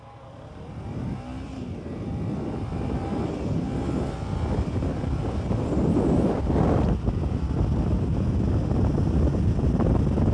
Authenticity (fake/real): real